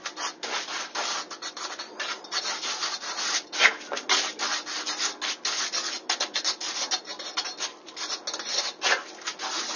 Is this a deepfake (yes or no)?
no